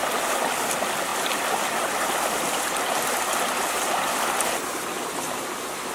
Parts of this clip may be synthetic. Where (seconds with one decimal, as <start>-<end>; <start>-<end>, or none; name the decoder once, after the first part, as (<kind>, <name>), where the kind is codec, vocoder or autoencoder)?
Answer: none